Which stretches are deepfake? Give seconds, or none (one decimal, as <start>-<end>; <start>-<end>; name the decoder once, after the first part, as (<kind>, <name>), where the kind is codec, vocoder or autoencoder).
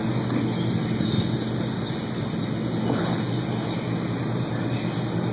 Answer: none